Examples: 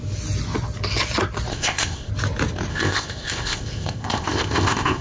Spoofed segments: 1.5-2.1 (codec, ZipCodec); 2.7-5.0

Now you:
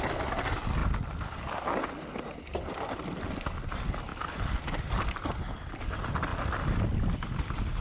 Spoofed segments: 4.1-5.2 (vocoder, BigVGAN v2); 6.3-7.2